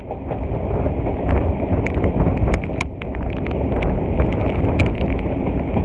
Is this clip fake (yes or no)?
no